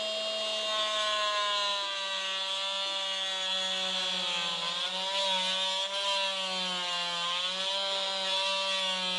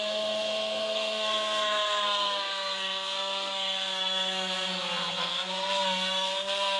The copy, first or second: second